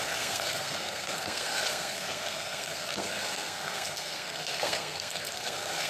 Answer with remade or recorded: remade